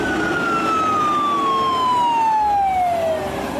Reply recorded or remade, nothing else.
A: recorded